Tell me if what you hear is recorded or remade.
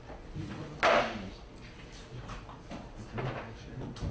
recorded